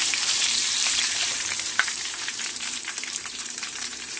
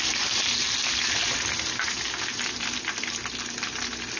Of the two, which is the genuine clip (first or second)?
second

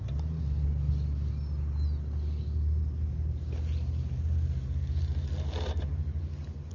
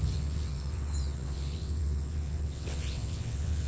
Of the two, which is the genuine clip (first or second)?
first